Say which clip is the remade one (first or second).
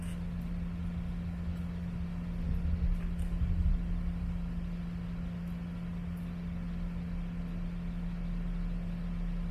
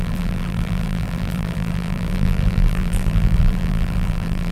second